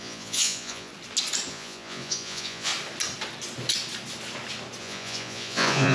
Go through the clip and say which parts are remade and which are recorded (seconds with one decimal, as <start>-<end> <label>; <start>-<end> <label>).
0.0-0.9 remade; 0.9-1.5 recorded; 1.5-2.7 remade; 2.7-4.8 recorded; 4.8-5.9 remade